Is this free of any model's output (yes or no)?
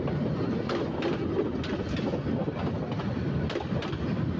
yes